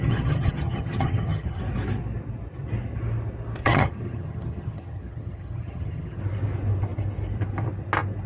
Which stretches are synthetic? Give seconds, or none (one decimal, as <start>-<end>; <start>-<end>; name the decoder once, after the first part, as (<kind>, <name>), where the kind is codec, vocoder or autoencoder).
0.0-1.6 (vocoder, HiFi-GAN); 3.6-6.2